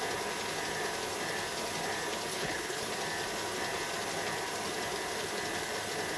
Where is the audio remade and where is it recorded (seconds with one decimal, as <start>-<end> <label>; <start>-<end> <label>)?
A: 0.0-2.3 recorded; 2.3-2.9 remade; 2.9-6.2 recorded